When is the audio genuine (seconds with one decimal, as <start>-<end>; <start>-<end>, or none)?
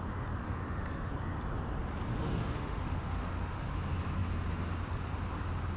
0.0-0.4; 1.1-2.1; 3.7-5.8